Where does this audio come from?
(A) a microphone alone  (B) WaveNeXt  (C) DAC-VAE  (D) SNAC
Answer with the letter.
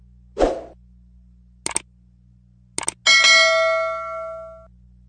A